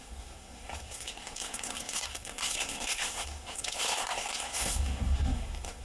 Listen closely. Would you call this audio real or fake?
fake